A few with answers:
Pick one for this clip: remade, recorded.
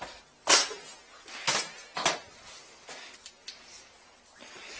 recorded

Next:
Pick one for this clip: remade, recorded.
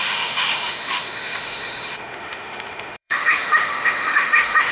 remade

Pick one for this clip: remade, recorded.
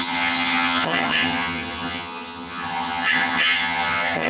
remade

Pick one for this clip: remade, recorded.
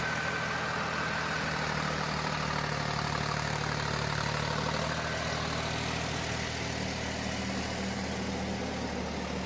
recorded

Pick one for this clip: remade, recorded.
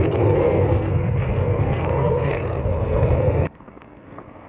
remade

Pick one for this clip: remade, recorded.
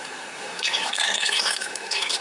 remade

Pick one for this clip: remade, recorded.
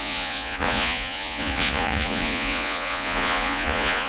remade